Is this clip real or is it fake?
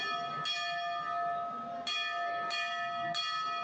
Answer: real